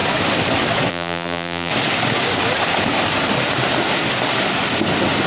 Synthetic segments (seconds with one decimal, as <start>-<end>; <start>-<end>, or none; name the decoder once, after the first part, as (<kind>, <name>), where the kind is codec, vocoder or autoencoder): 0.9-1.7 (vocoder, BigVGAN v2)